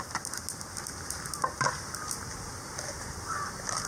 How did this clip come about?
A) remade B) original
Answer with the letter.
B